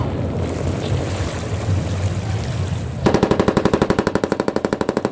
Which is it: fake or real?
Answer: real